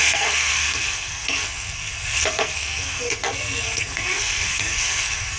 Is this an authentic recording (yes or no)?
no